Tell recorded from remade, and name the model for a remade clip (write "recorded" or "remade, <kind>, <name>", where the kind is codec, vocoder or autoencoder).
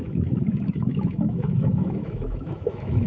remade, autoencoder, DAC-VAE